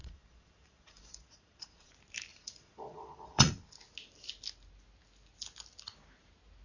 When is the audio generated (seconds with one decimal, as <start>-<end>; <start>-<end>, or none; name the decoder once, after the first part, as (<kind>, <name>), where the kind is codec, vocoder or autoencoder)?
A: 0.0-1.9 (vocoder, Vocos); 2.3-3.5